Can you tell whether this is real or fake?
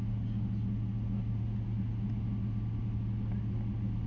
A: real